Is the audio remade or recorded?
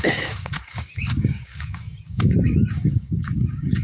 remade